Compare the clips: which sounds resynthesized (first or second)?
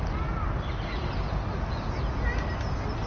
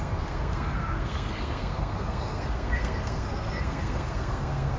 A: second